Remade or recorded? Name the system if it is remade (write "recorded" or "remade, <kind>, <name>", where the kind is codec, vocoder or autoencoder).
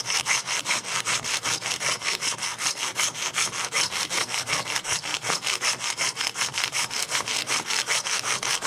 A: remade, codec, SNAC